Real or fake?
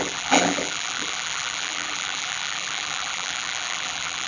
fake